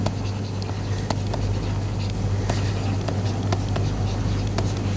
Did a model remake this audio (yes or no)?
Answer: no